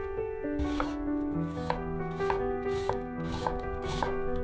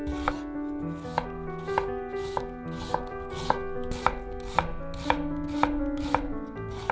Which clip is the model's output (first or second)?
first